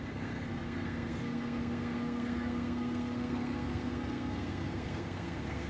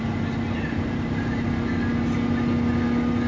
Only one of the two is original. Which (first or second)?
second